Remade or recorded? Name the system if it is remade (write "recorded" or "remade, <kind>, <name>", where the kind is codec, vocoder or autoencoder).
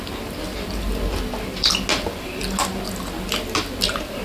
recorded